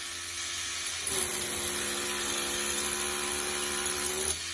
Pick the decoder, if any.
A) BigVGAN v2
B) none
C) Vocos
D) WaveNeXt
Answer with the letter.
B